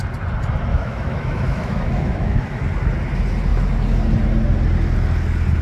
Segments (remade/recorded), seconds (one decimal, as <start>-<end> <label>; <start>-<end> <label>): 0.0-0.7 recorded; 0.7-2.6 remade; 2.6-5.6 recorded